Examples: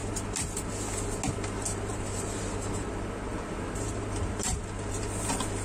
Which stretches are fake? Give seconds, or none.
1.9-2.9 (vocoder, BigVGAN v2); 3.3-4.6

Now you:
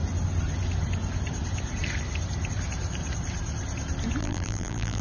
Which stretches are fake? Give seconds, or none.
4.2-5.0 (vocoder, BigVGAN v2)

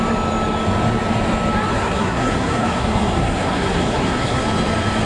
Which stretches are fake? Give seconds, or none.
1.7-4.4 (codec, SNAC)

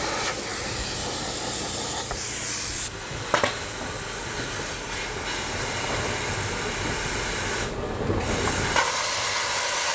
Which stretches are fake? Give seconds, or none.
none